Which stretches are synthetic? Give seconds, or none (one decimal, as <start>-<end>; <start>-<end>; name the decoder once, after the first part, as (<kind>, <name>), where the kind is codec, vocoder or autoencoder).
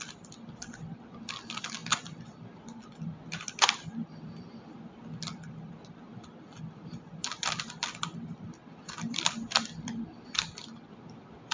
none